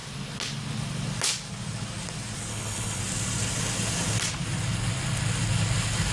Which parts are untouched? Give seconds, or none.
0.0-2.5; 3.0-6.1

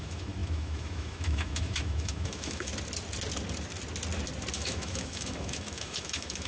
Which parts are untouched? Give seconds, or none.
2.7-4.5

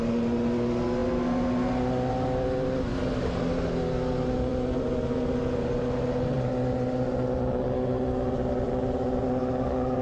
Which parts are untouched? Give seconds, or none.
0.0-10.0

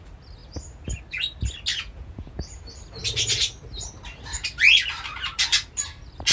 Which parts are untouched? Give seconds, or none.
0.0-1.7; 2.6-6.3

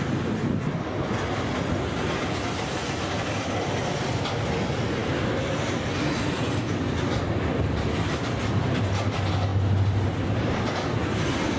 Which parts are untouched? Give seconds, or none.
0.0-11.6

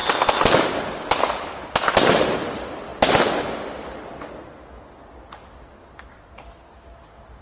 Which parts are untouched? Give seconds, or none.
0.0-7.4

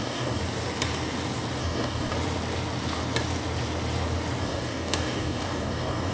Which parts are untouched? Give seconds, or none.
0.4-1.6; 2.1-4.4